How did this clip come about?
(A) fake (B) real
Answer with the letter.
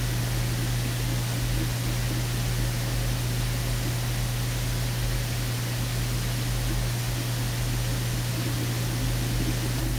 B